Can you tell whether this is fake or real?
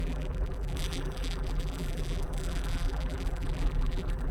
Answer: fake